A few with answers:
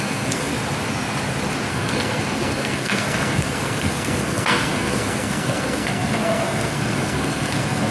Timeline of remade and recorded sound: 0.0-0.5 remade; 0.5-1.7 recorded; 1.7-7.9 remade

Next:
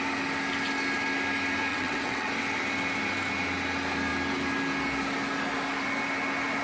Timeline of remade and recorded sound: 0.0-1.7 recorded; 1.7-2.3 remade; 2.3-6.6 recorded

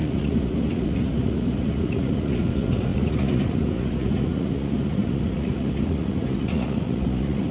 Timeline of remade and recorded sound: 0.0-7.5 remade